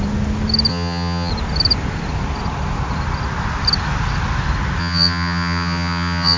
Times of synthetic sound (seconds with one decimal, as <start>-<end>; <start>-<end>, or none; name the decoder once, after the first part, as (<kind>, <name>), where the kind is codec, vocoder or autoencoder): 0.7-1.3 (vocoder, HiFi-GAN); 4.8-6.4